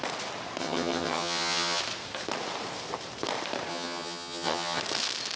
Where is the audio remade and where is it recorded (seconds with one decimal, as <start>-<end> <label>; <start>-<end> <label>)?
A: 0.0-0.6 recorded; 0.6-1.8 remade; 1.8-3.7 recorded; 3.7-4.8 remade; 4.8-5.4 recorded